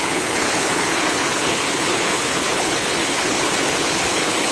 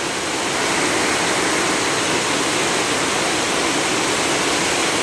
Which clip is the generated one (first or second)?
first